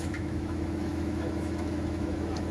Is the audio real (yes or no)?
no